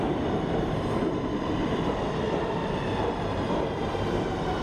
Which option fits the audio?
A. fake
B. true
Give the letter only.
A